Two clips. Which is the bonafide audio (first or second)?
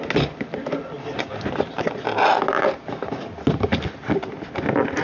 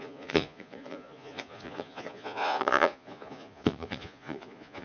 first